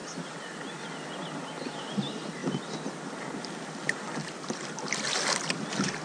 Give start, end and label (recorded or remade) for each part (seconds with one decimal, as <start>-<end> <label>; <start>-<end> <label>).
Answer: 0.0-6.0 recorded